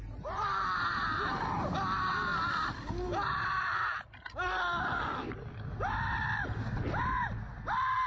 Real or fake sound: real